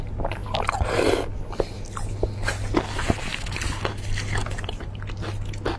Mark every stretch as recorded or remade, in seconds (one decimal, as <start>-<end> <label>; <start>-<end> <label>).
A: 0.0-5.8 recorded